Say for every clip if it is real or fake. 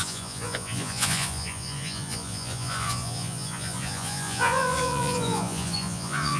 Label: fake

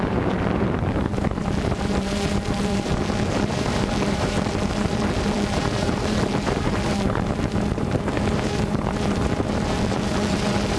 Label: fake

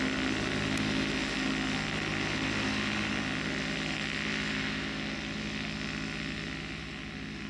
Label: real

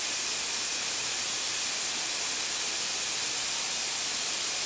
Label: real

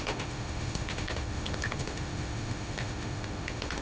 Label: fake